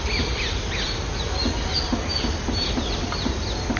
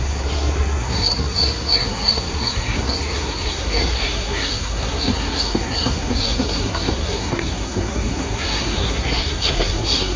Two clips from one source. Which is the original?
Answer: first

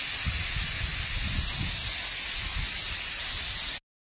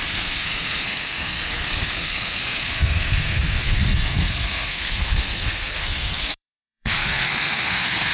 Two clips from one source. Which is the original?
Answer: first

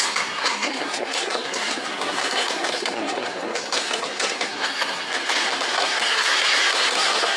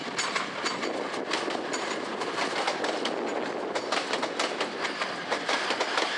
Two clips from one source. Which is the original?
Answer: second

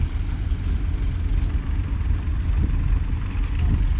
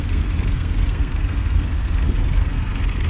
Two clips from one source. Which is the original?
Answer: first